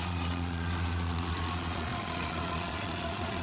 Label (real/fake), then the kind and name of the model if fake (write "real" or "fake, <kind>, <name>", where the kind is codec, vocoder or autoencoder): fake, vocoder, Vocos